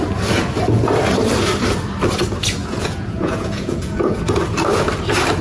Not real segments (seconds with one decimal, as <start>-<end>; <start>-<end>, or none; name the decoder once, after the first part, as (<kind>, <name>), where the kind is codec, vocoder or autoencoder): 2.6-4.2 (vocoder, Vocos)

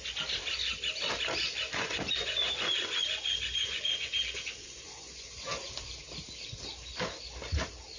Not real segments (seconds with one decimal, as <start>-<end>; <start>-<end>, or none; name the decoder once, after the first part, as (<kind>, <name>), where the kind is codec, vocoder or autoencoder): 1.4-5.7 (vocoder, Vocos)

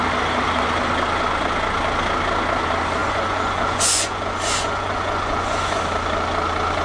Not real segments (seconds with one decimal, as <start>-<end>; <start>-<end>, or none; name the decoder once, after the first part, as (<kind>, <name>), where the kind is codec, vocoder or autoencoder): 3.0-5.8 (vocoder, Vocos)

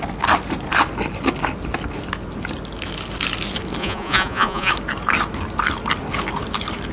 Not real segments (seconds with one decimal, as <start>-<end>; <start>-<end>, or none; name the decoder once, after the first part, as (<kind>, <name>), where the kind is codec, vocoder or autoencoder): 3.8-4.7 (vocoder, Vocos)

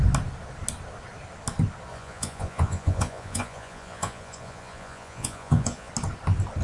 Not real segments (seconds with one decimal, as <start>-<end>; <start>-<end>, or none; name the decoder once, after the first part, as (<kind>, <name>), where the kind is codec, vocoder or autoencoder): 1.9-5.9 (vocoder, Vocos)